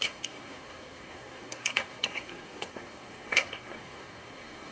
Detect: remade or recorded remade